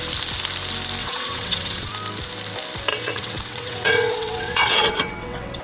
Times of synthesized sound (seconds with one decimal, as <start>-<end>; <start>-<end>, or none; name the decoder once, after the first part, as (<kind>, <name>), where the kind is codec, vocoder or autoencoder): 1.0-1.9 (vocoder, WaveNeXt); 2.9-5.6